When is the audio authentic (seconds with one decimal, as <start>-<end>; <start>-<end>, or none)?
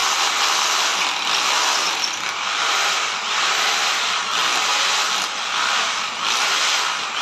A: 0.0-7.2